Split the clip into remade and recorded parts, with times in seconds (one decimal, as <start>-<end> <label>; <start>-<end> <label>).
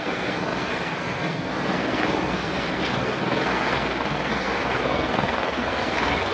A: 0.0-6.3 remade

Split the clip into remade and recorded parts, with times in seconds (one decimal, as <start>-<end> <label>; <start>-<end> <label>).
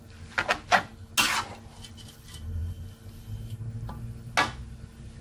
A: 0.0-5.2 recorded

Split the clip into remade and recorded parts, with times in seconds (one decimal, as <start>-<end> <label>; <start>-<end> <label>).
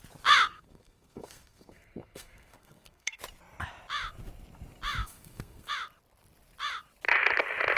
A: 0.0-0.5 recorded; 0.5-3.2 remade; 3.2-5.0 recorded; 5.0-5.7 remade; 5.7-7.8 recorded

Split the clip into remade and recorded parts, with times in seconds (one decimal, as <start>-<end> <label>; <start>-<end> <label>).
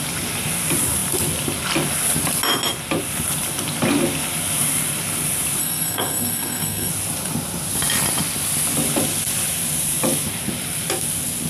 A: 0.0-5.6 recorded; 5.6-6.9 remade; 6.9-11.5 recorded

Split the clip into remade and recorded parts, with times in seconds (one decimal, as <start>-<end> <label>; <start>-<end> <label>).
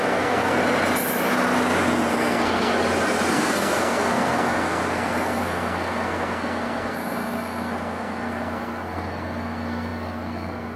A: 0.0-0.6 remade; 0.6-2.1 recorded; 2.1-2.7 remade; 2.7-3.3 recorded; 3.3-10.8 remade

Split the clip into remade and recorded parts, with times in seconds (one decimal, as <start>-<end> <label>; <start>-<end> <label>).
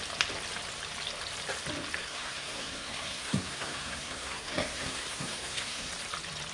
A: 0.0-2.0 recorded; 2.0-5.9 remade; 5.9-6.5 recorded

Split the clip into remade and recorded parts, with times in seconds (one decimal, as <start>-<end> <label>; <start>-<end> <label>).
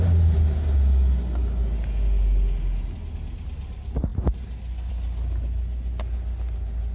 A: 0.0-6.9 recorded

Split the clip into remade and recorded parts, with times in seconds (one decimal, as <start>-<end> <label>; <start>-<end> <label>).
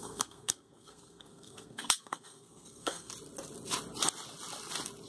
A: 0.0-3.1 remade; 3.1-5.1 recorded